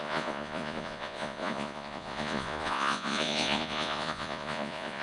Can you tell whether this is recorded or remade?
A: remade